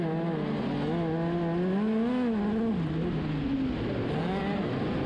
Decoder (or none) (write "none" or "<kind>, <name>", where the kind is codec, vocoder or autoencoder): none